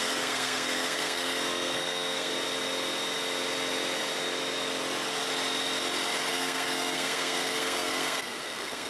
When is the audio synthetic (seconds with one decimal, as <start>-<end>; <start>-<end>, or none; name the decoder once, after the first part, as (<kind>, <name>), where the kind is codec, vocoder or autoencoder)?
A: 0.0-2.3 (codec, SNAC); 6.3-8.9